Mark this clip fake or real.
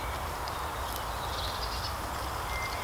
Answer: real